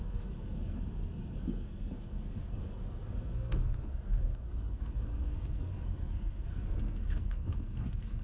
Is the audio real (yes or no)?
no